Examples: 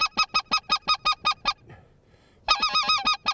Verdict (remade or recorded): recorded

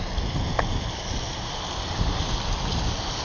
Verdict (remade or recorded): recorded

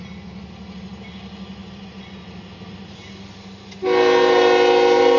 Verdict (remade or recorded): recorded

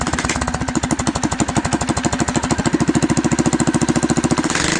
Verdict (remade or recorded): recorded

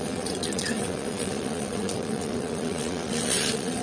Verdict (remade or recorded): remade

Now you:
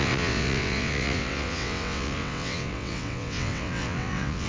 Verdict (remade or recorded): remade